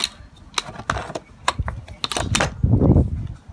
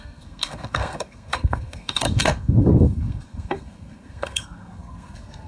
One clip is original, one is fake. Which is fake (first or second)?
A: second